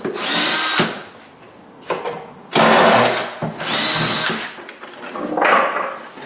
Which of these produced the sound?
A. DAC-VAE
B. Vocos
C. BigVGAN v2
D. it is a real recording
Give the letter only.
D